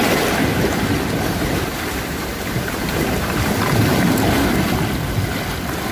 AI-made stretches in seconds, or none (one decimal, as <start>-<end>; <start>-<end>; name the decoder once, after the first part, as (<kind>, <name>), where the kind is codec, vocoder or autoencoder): 0.5-3.5 (vocoder, BigVGAN v2)